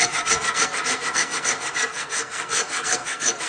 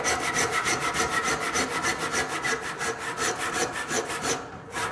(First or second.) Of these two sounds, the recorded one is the second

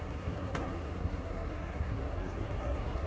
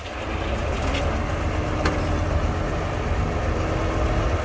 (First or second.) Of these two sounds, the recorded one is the second